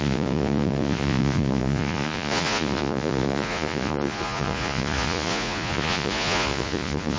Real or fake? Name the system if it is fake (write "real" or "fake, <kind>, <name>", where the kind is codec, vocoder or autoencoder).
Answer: fake, vocoder, Vocos